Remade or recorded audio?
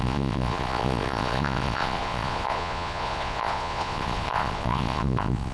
remade